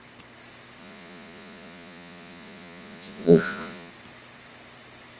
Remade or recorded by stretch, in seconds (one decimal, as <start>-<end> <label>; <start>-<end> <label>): 0.0-0.8 recorded; 0.8-3.9 remade; 3.9-5.2 recorded